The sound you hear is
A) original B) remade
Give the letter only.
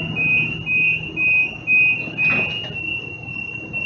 A